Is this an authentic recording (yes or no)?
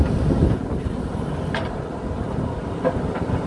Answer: yes